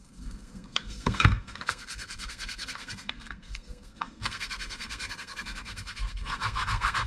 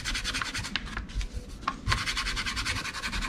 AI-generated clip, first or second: first